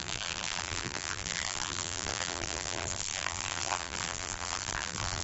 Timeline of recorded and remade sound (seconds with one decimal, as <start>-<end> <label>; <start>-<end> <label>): 0.0-5.2 remade